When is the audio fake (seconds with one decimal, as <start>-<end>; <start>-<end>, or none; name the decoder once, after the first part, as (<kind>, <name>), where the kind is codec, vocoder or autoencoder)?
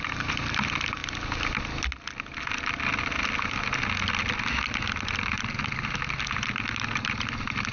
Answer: none